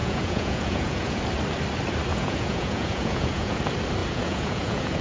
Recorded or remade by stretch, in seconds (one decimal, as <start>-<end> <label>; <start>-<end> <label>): 0.0-1.2 remade; 1.2-2.1 recorded; 2.1-3.6 remade; 3.6-4.0 recorded; 4.0-5.0 remade